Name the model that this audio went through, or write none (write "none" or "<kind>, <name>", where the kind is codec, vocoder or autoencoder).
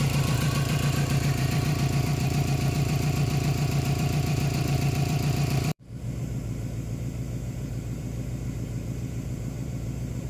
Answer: vocoder, BigVGAN v2